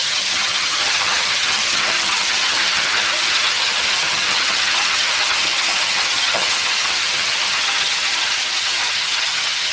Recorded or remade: remade